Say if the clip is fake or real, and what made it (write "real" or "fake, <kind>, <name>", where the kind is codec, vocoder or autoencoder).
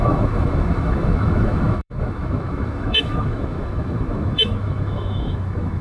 fake, autoencoder, DAC-VAE